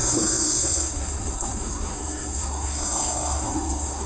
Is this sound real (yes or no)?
no